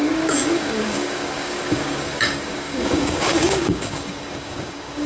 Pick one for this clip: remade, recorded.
remade